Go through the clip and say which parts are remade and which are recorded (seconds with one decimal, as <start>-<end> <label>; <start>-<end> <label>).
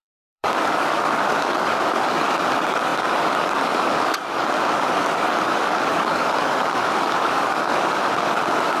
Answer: 0.0-8.8 remade